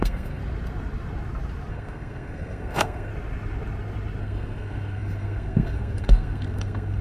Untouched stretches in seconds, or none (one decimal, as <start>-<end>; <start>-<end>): 0.4-1.7; 3.1-4.2